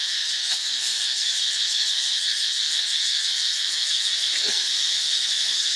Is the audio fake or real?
fake